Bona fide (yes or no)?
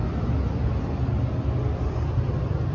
yes